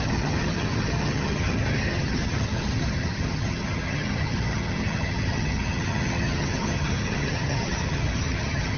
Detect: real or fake fake